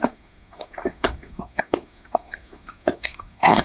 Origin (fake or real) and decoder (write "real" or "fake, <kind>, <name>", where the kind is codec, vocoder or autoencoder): fake, codec, SNAC